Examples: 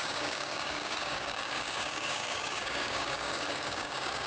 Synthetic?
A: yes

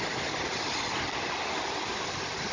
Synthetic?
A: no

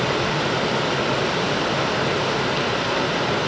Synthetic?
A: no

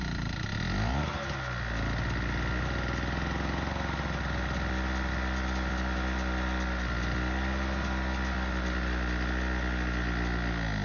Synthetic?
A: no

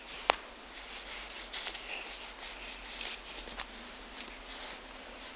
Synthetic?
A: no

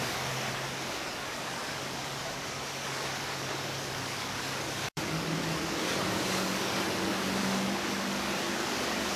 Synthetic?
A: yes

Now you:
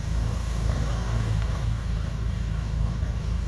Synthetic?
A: yes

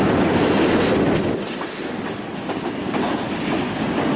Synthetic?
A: no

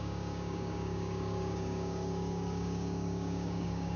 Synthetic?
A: yes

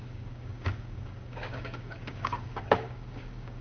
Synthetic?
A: yes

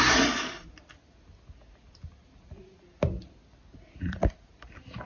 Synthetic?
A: no